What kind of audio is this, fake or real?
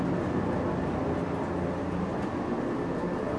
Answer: real